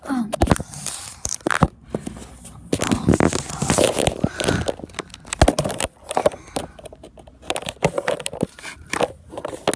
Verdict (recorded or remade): recorded